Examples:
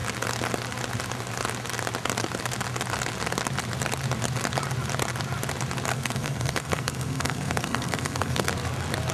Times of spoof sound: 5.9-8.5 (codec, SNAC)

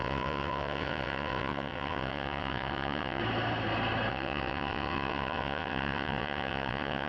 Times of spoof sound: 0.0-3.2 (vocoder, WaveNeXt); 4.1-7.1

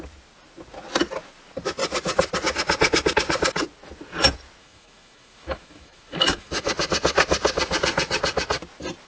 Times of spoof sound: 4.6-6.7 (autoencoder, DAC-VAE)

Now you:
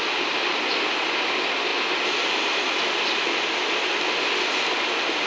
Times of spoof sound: none

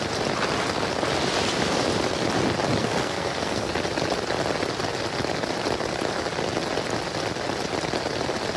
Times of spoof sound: 2.8-3.7 (codec, SNAC)